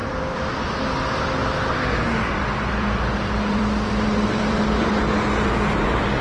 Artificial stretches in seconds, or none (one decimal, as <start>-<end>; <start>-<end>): 0.0-0.5; 1.4-5.1